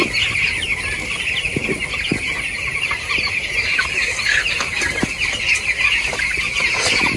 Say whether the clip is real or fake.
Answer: real